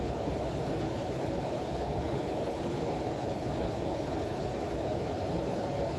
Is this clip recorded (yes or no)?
no